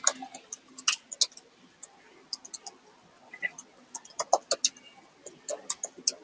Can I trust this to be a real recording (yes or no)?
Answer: yes